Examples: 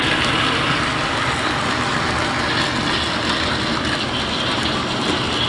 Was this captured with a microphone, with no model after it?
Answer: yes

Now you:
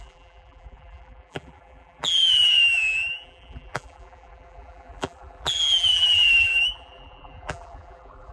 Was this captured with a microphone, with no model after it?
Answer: no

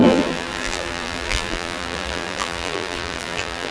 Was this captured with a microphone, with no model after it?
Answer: no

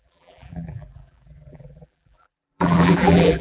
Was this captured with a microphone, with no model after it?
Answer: no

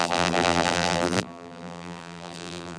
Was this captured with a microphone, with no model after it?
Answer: no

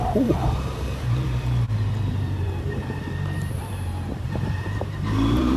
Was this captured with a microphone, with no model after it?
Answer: no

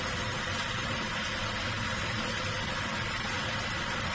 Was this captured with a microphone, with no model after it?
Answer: no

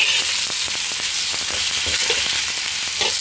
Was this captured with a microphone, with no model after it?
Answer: yes